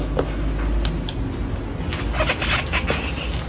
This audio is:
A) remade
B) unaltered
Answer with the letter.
B